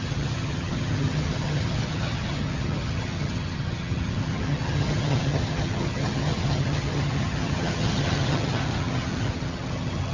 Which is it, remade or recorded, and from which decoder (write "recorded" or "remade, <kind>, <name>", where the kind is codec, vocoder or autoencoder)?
remade, vocoder, HiFi-GAN